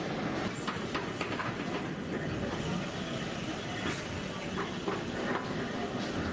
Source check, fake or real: real